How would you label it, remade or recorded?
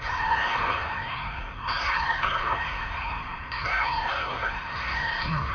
remade